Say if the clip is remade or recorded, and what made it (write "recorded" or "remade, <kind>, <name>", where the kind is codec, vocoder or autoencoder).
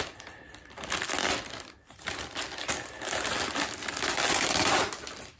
recorded